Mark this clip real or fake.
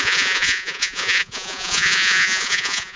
fake